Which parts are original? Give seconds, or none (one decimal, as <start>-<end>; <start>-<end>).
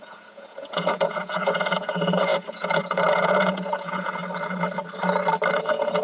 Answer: 4.2-5.6